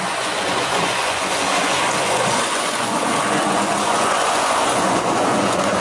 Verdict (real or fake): fake